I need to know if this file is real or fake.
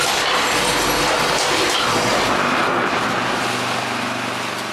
real